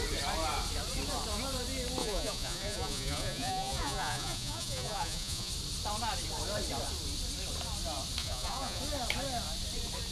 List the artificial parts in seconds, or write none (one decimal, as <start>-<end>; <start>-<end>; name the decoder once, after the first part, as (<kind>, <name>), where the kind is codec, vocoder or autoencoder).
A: 2.0-5.5 (vocoder, Vocos); 8.2-8.8

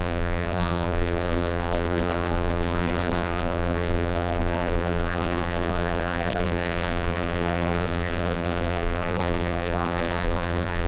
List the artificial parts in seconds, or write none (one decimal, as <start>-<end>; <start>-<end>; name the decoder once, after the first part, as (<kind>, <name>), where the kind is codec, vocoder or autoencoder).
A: 0.0-10.9 (vocoder, BigVGAN v2)

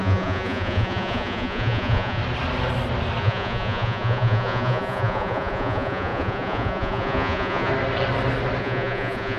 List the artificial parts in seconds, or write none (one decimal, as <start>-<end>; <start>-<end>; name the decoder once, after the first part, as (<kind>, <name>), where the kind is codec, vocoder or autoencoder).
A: 0.0-2.2 (vocoder, Vocos); 3.2-7.7; 8.6-9.4

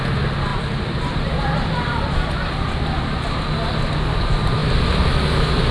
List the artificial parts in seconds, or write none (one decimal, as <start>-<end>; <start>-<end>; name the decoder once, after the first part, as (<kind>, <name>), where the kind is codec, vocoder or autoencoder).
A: none

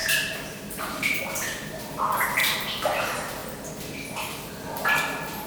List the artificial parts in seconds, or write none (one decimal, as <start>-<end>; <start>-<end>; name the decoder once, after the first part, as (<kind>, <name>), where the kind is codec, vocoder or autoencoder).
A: 0.0-1.2 (vocoder, BigVGAN v2); 2.4-3.0

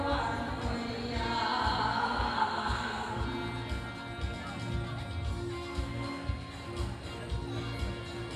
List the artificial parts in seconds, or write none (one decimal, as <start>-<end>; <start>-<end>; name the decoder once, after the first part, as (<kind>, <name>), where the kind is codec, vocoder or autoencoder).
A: 2.0-3.2 (codec, SNAC); 5.7-6.5

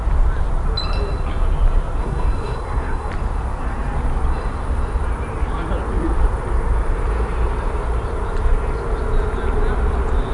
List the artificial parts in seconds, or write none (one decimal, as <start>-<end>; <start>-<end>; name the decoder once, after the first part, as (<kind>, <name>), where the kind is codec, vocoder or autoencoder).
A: 2.0-3.1 (codec, SNAC)